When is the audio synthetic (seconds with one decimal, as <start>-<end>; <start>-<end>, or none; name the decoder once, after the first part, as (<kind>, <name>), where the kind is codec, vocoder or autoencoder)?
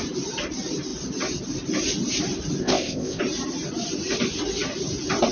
2.6-3.2 (codec, ZipCodec)